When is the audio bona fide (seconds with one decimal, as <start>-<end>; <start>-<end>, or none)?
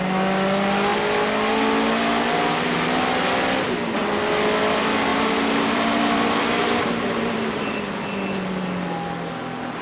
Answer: 0.0-5.1; 7.7-9.8